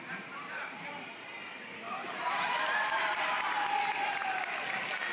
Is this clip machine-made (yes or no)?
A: yes